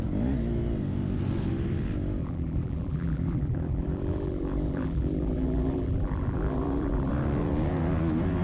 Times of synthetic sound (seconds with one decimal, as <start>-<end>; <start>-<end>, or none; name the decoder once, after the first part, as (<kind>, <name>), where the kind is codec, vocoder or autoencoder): 2.2-7.1 (vocoder, BigVGAN v2)